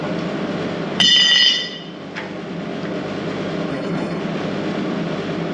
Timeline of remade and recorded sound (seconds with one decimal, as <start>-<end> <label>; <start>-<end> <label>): 0.0-3.7 recorded; 3.7-4.2 remade; 4.2-5.5 recorded